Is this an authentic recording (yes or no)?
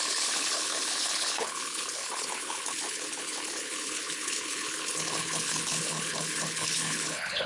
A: no